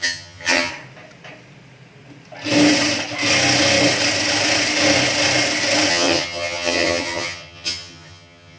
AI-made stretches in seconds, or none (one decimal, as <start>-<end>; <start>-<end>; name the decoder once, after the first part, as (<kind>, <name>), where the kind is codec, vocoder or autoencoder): 0.0-0.7 (vocoder, HiFi-GAN); 5.9-8.6